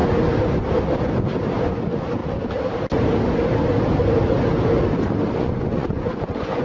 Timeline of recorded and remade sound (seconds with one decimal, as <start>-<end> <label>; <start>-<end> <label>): 0.0-1.6 recorded; 1.6-2.2 remade; 2.2-5.3 recorded; 5.3-6.6 remade